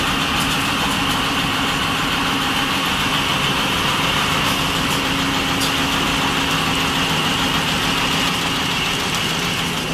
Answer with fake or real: real